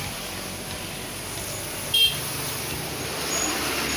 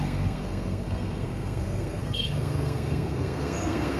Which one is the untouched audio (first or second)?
first